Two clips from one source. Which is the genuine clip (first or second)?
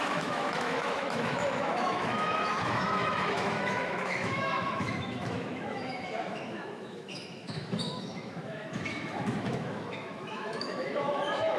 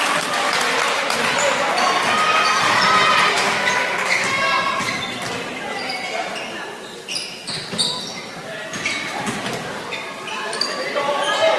second